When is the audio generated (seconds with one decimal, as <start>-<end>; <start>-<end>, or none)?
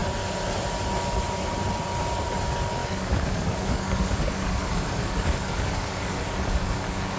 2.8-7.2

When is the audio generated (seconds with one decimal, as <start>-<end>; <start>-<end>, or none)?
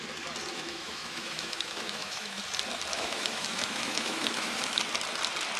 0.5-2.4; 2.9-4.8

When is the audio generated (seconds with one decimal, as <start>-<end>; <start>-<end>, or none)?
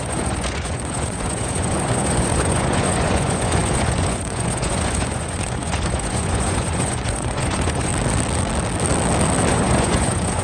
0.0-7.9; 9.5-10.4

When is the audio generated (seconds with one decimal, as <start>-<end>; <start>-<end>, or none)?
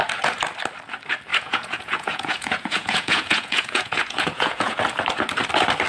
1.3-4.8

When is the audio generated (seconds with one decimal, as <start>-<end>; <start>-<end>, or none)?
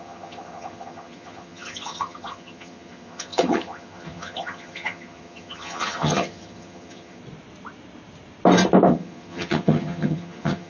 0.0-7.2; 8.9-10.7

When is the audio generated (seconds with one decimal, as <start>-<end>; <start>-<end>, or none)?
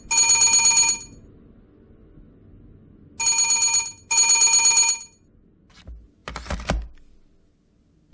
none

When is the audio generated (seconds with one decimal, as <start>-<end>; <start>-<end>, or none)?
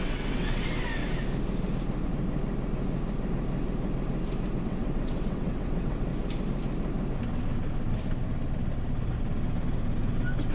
0.0-1.0; 4.6-6.1